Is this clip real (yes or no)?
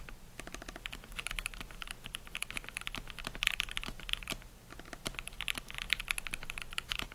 yes